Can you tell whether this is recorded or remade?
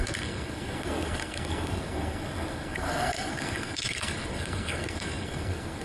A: remade